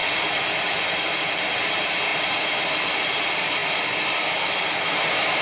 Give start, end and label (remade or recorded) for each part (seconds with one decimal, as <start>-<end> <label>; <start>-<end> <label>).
0.0-2.1 remade; 2.1-2.7 recorded; 2.7-5.4 remade